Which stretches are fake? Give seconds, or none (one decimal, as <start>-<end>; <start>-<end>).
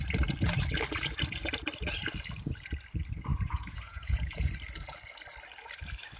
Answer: 3.3-4.5